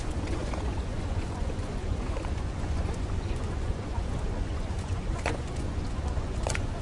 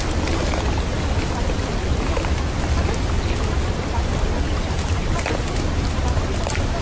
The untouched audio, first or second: second